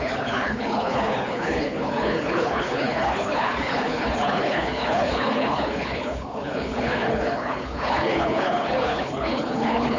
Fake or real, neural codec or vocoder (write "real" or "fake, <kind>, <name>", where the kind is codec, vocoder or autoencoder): fake, codec, HILCodec